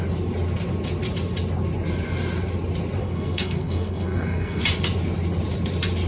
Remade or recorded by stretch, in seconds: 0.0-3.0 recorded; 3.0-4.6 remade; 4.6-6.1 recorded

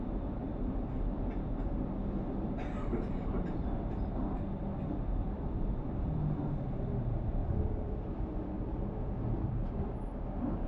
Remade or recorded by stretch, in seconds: 0.0-0.4 recorded; 0.4-1.1 remade; 1.1-7.4 recorded; 7.4-9.7 remade; 9.7-10.7 recorded

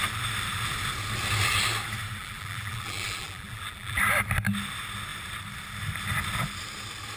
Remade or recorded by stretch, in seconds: 0.0-2.2 recorded; 2.2-4.0 remade; 4.0-7.2 recorded

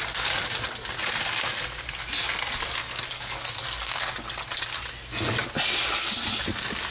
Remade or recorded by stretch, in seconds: 0.0-3.1 recorded; 3.1-4.0 remade; 4.0-6.9 recorded

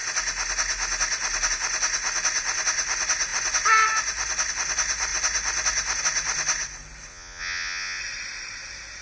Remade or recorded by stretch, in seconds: 0.0-7.1 recorded; 7.1-8.0 remade; 8.0-9.0 recorded

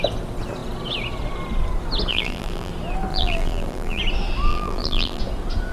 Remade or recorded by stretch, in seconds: 0.0-2.1 recorded; 2.1-2.7 remade; 2.7-3.1 recorded; 3.1-4.0 remade; 4.0-4.5 recorded; 4.5-5.2 remade; 5.2-5.7 recorded

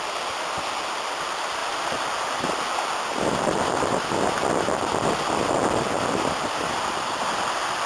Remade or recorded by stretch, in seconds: 0.0-7.9 recorded

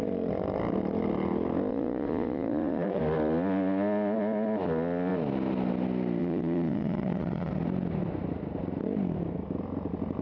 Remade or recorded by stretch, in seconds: 0.0-1.7 recorded; 1.7-3.0 remade; 3.0-6.2 recorded; 6.2-7.5 remade; 7.5-10.2 recorded